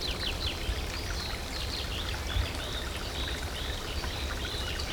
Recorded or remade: recorded